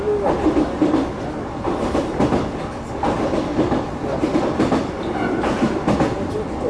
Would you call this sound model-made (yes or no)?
no